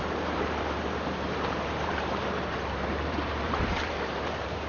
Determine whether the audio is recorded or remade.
remade